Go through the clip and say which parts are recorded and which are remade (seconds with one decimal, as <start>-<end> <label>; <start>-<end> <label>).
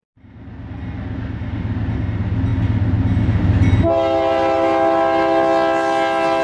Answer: 0.0-6.4 recorded